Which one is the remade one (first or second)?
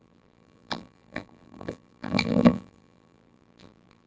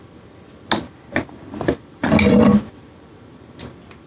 first